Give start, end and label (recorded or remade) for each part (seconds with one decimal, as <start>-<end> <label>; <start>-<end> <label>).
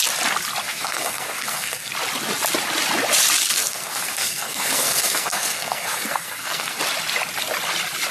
0.0-0.6 recorded; 0.6-1.9 remade; 1.9-3.5 recorded; 3.5-6.8 remade; 6.8-8.1 recorded